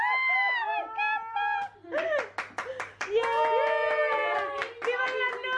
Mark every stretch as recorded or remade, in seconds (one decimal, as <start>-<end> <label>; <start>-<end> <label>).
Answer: 0.0-5.6 recorded